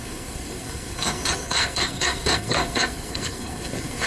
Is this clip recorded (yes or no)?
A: no